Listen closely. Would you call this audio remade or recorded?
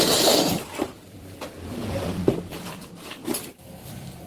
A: remade